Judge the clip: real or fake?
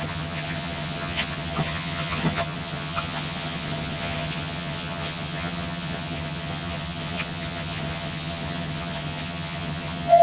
fake